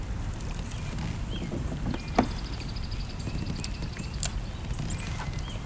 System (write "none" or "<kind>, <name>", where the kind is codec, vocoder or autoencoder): none